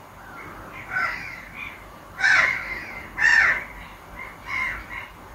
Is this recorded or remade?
recorded